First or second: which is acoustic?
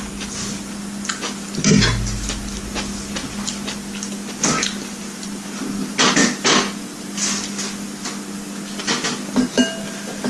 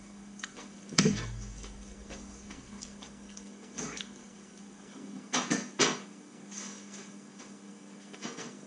first